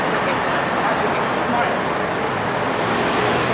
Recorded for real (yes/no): yes